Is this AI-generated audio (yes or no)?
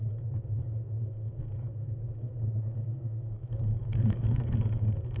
yes